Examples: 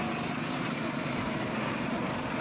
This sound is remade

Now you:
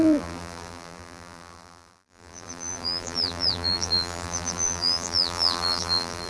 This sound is remade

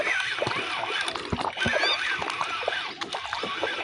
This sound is recorded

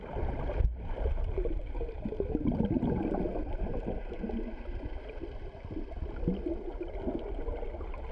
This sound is recorded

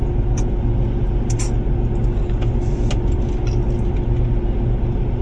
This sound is recorded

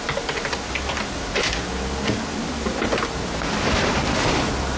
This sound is recorded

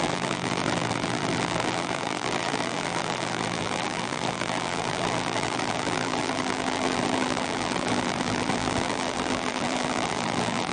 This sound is remade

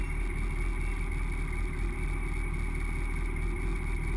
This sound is recorded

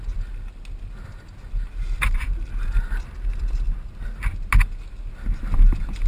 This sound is recorded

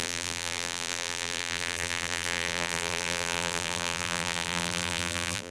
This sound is remade